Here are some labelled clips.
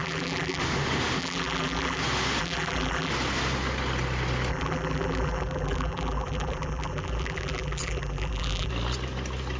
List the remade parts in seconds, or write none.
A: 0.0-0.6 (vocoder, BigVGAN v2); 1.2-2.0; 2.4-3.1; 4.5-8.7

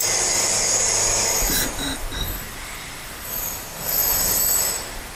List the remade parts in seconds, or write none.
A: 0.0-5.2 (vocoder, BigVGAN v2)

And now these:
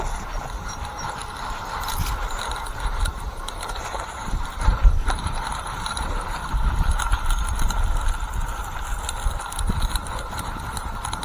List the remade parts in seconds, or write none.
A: 0.0-1.2 (vocoder, BigVGAN v2); 2.7-6.4; 9.9-10.5

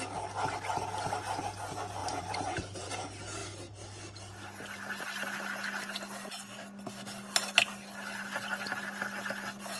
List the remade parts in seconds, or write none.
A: 2.0-2.9 (vocoder, BigVGAN v2)

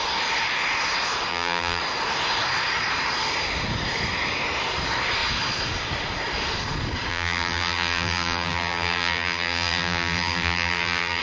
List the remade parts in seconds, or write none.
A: 1.3-1.8 (vocoder, BigVGAN v2); 7.1-11.2

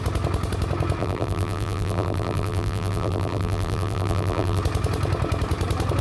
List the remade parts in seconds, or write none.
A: 1.0-4.6 (vocoder, BigVGAN v2)

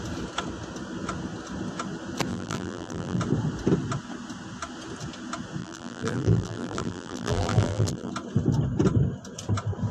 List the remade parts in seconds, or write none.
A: 2.3-3.2 (vocoder, BigVGAN v2); 5.6-8.1